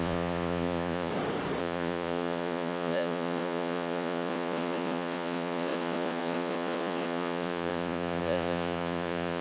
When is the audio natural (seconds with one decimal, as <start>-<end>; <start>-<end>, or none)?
1.1-1.6